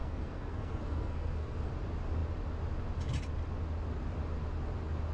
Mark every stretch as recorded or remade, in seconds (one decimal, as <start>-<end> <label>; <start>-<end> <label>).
0.0-1.7 remade; 1.7-5.1 recorded

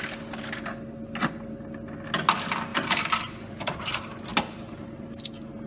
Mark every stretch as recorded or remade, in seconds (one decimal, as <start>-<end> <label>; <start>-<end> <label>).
0.0-2.7 recorded; 2.7-3.9 remade; 3.9-4.3 recorded; 4.3-5.2 remade; 5.2-5.7 recorded

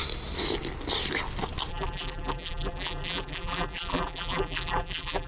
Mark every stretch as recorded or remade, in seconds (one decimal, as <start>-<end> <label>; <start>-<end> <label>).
0.0-1.7 recorded; 1.7-5.3 remade

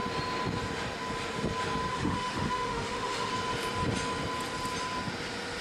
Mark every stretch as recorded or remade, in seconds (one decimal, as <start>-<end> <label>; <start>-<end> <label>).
0.0-1.9 recorded; 1.9-3.3 remade; 3.3-5.6 recorded

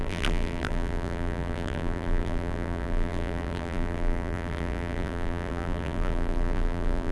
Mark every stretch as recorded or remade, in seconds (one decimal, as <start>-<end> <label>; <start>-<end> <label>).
0.0-7.1 remade